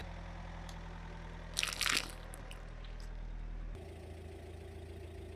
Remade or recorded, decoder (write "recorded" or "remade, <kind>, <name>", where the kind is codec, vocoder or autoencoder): recorded